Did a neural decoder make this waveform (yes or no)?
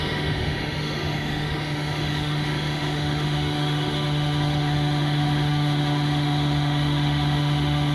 yes